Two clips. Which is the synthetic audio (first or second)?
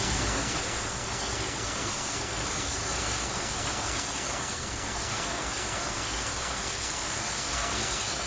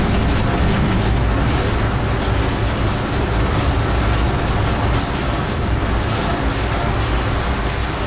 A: first